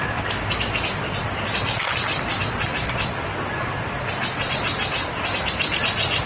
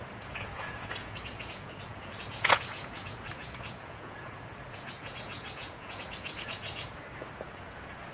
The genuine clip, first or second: first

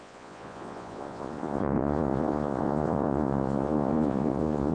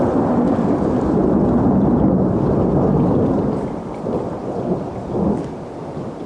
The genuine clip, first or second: second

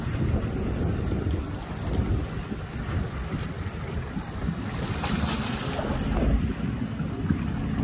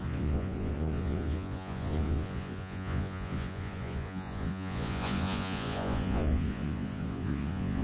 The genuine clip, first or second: first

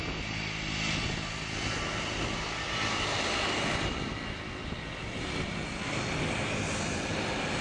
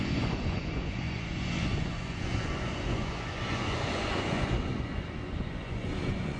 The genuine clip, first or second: first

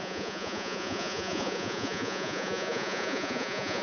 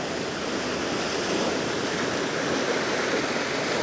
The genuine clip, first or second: second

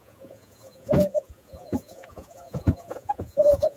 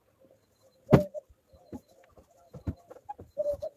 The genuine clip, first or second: second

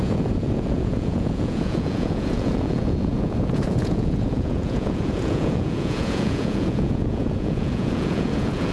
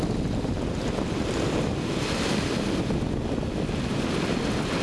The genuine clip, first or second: second